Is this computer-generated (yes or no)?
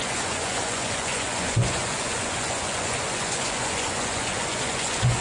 yes